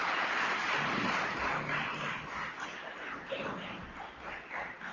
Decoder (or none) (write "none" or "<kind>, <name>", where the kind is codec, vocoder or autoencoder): none